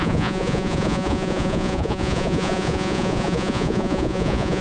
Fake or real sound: fake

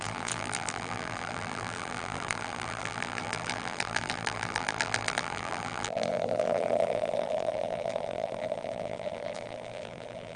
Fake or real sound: fake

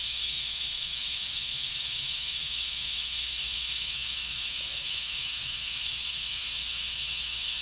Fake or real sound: fake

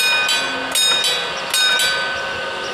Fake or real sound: real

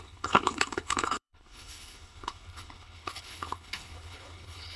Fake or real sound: fake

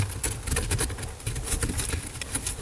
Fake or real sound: real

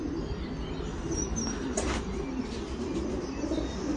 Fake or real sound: real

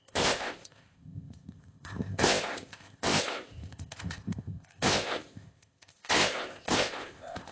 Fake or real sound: fake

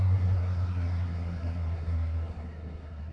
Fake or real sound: fake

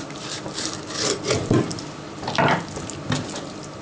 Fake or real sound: real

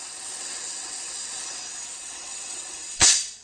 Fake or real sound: fake